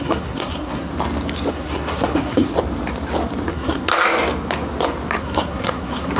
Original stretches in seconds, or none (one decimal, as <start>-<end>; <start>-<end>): 0.9-1.5; 2.5-3.5; 3.9-5.2